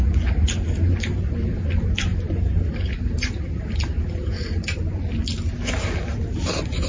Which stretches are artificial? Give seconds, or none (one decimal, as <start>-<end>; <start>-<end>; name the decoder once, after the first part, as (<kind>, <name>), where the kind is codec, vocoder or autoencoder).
none